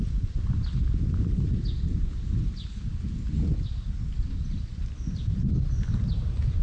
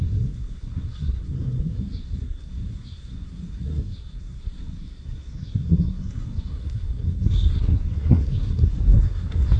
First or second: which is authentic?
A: first